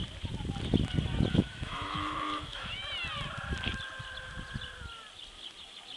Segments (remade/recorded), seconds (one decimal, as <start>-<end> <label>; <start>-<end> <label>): 0.0-1.3 recorded; 1.3-2.8 remade; 2.8-6.0 recorded

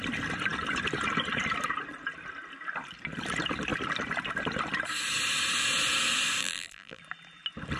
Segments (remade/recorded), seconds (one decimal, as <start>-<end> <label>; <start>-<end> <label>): 0.0-6.4 recorded; 6.4-7.0 remade; 7.0-7.8 recorded

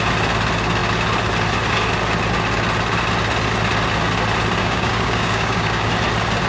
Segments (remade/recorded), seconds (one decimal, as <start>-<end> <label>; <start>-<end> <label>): 0.0-4.6 recorded; 4.6-5.9 remade; 5.9-6.5 recorded

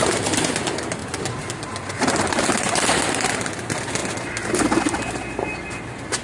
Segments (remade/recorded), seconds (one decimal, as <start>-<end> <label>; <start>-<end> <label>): 0.0-6.2 recorded